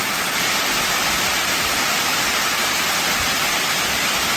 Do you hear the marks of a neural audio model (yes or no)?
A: no